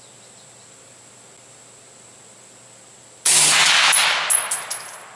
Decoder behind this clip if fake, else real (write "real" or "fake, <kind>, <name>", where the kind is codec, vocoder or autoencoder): real